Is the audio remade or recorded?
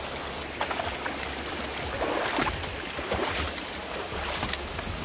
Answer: recorded